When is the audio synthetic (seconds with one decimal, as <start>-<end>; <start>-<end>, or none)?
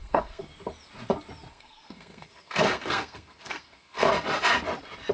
0.0-0.5; 1.5-4.1